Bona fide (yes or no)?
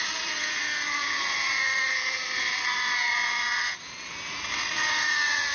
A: no